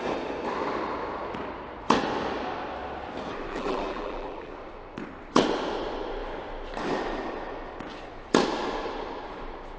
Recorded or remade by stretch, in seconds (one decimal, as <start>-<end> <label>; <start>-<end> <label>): 0.0-3.5 recorded; 3.5-4.5 remade; 4.5-9.8 recorded